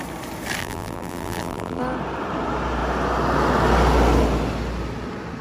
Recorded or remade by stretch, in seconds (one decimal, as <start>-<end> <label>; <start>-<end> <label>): 0.0-0.6 recorded; 0.6-1.8 remade; 1.8-5.4 recorded